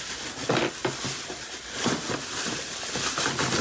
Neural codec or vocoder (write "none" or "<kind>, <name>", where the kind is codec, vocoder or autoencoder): none